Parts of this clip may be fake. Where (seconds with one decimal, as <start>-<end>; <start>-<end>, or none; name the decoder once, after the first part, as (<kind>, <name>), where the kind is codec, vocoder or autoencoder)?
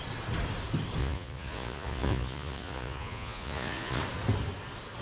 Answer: 1.0-4.0 (vocoder, Vocos)